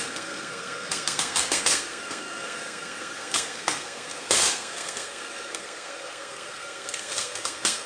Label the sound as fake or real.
fake